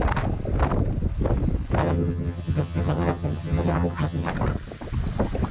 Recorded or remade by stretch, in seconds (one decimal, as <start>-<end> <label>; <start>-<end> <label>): 0.0-1.8 recorded; 1.8-4.3 remade; 4.3-5.5 recorded